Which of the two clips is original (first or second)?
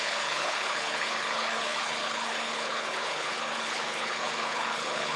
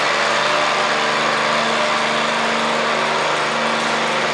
second